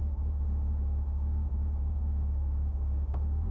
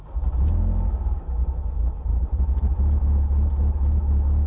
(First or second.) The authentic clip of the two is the second